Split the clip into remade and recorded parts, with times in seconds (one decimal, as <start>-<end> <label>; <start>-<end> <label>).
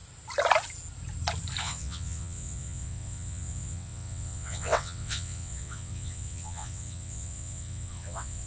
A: 0.0-1.6 recorded; 1.6-8.5 remade